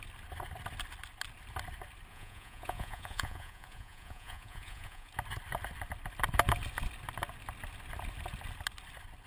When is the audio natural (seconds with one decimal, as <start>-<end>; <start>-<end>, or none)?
0.0-2.1; 5.1-9.3